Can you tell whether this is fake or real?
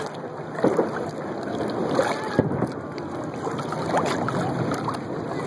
real